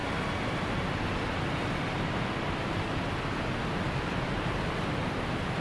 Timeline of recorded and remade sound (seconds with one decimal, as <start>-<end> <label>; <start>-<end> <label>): 0.0-5.6 recorded

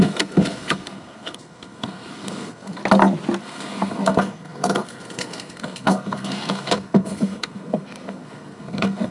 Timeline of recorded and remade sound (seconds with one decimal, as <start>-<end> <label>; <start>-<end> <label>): 0.0-2.8 remade; 2.8-3.4 recorded; 3.4-9.1 remade